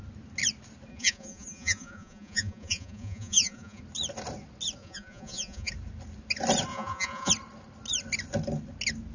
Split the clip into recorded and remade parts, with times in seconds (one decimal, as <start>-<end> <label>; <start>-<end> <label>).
0.0-0.9 recorded; 0.9-3.8 remade; 3.8-4.8 recorded; 4.8-5.7 remade; 5.7-6.7 recorded; 6.7-7.3 remade; 7.3-9.1 recorded